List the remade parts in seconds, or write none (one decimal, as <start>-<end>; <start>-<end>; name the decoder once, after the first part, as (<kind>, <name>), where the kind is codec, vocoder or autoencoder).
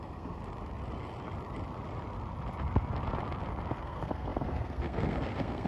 0.0-0.4 (codec, SNAC); 3.8-5.7